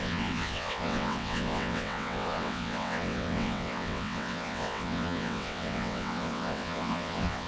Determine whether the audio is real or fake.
fake